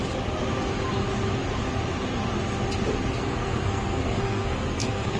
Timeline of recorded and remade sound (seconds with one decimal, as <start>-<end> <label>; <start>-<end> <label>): 0.0-3.1 recorded; 3.1-5.2 remade